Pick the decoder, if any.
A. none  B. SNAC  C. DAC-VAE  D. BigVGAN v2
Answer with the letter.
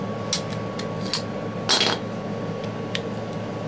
A